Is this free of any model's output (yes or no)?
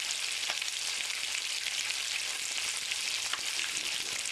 yes